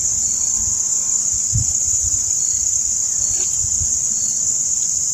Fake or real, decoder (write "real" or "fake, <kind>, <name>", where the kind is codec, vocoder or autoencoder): real